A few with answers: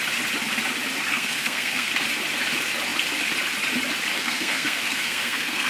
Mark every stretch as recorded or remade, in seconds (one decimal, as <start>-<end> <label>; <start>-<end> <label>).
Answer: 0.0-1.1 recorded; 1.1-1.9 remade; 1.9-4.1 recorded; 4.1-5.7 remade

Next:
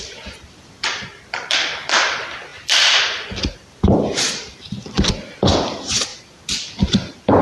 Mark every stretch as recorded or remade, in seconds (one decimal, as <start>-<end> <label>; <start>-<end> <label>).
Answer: 0.0-7.4 remade

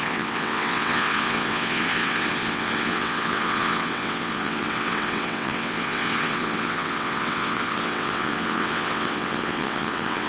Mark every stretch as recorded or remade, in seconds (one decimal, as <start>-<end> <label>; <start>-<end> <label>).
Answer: 0.0-10.3 remade

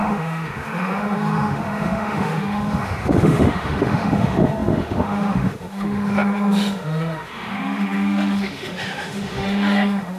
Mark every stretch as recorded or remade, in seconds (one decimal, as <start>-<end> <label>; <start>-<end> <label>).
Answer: 0.0-10.2 remade

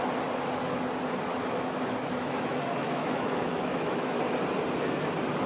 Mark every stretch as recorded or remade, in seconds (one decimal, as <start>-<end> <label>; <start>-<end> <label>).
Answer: 0.0-1.3 recorded; 1.3-4.2 remade; 4.2-5.5 recorded

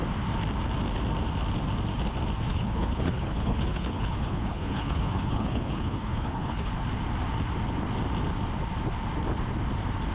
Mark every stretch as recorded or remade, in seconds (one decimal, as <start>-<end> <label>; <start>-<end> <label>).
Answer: 0.0-2.5 recorded; 2.5-6.7 remade; 6.7-10.1 recorded

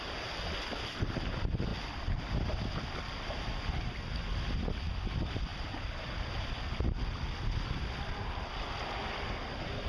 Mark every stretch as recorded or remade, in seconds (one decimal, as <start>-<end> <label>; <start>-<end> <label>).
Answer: 0.0-9.9 recorded